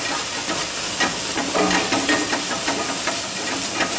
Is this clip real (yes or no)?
yes